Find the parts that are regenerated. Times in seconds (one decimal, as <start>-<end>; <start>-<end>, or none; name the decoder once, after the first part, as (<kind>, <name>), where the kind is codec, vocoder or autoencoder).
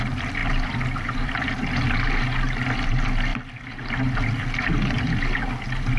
none